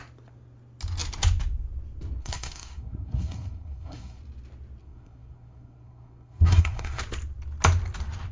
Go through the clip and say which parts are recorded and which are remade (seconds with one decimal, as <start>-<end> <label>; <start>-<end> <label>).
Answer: 0.0-2.2 recorded; 2.2-4.2 remade; 4.2-4.8 recorded; 4.8-7.0 remade; 7.0-8.3 recorded